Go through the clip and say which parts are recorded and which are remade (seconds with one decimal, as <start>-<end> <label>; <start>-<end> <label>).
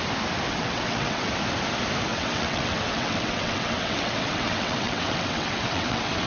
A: 0.0-0.5 recorded; 0.5-1.3 remade; 1.3-2.1 recorded; 2.1-6.3 remade